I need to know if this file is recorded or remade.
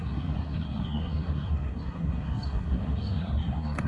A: remade